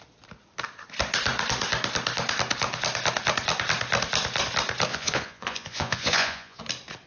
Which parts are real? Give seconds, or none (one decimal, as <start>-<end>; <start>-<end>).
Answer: 0.0-4.9; 6.6-7.1